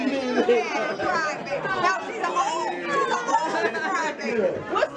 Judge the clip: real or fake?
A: real